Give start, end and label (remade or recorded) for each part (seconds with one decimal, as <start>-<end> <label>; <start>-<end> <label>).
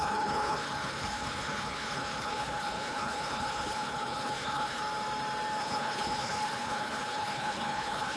0.0-4.8 remade; 4.8-5.6 recorded; 5.6-8.2 remade